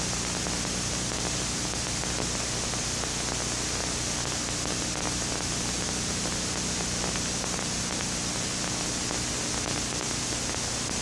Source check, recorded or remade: recorded